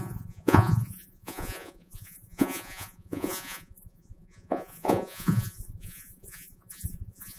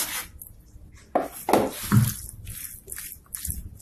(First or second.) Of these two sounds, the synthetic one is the first